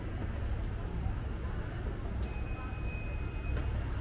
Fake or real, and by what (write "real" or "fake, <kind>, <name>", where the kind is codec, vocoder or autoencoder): real